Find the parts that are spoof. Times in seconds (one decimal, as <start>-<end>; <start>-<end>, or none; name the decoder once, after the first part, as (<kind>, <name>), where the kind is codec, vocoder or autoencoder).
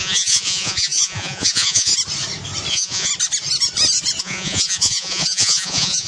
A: 0.0-1.9 (vocoder, Vocos); 2.7-3.1; 4.2-6.1